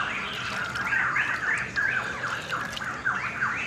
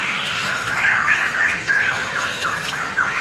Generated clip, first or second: second